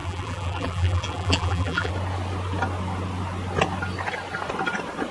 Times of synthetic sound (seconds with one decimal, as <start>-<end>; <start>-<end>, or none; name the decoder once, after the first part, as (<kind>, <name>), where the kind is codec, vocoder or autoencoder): 0.0-1.9 (vocoder, BigVGAN v2)